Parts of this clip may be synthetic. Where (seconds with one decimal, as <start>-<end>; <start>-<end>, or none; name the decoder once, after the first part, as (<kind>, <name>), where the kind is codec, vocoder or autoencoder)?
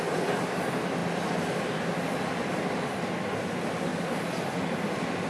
none